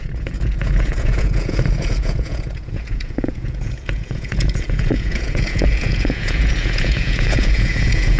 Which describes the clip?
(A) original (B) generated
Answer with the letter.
B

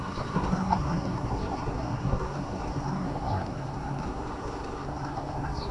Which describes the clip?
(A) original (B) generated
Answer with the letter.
B